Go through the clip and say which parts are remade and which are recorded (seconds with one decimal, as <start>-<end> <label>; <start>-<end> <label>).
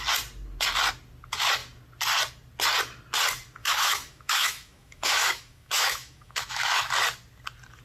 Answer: 0.0-3.6 recorded; 3.6-6.9 remade; 6.9-7.8 recorded